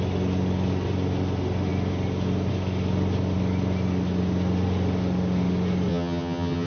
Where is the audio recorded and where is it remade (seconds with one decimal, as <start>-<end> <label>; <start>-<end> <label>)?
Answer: 0.0-5.9 recorded; 5.9-6.7 remade